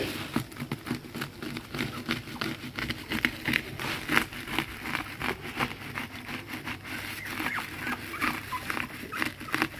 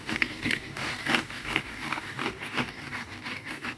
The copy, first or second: second